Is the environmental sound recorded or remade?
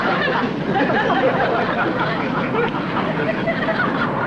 recorded